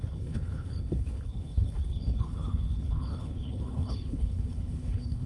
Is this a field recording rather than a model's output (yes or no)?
no